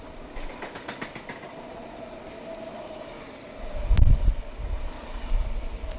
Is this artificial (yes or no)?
no